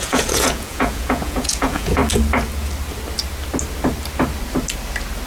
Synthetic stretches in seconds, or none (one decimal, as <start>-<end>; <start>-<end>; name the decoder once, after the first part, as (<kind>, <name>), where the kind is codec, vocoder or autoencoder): 0.0-2.0 (vocoder, Vocos)